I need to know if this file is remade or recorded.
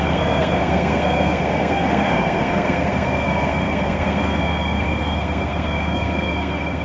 remade